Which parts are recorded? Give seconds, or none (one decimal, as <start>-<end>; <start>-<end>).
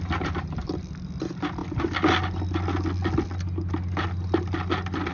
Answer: 0.0-5.1